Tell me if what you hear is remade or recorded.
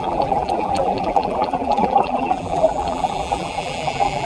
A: remade